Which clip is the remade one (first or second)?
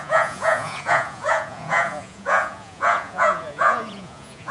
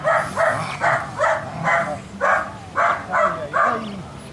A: first